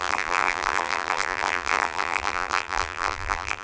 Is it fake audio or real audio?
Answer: fake